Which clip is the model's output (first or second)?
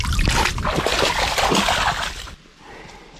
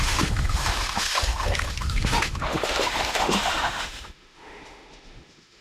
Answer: second